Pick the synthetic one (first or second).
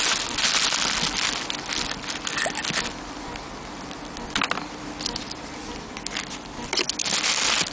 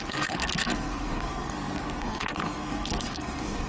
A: second